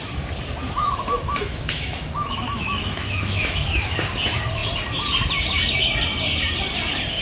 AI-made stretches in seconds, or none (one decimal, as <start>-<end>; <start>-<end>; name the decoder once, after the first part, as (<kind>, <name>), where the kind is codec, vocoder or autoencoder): 0.8-3.9 (autoencoder, DAC-VAE)